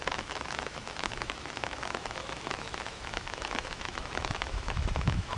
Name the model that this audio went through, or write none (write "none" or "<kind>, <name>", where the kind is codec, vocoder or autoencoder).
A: autoencoder, DAC-VAE